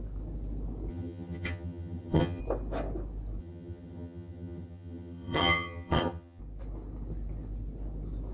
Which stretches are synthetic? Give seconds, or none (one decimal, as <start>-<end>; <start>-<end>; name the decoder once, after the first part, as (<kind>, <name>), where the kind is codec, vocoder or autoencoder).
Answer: 0.9-2.4 (vocoder, HiFi-GAN); 3.4-6.4